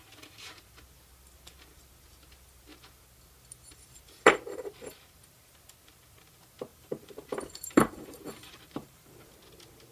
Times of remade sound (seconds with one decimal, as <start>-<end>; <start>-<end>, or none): 6.7-9.3